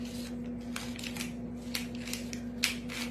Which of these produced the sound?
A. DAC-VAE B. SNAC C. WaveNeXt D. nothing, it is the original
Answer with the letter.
D